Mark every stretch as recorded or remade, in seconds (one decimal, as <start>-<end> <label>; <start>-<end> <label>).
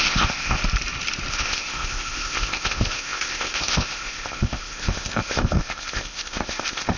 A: 0.0-0.6 remade; 0.6-1.3 recorded; 1.3-7.0 remade